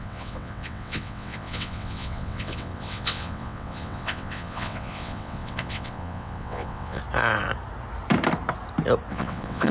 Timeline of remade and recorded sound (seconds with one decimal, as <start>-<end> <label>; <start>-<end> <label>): 0.0-7.0 remade; 7.0-9.1 recorded; 9.1-9.7 remade